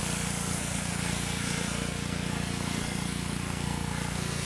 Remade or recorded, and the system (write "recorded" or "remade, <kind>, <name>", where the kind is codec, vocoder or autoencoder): remade, codec, SNAC